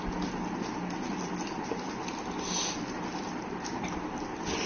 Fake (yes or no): no